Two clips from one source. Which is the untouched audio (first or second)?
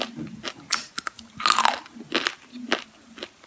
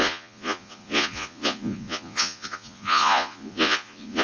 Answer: first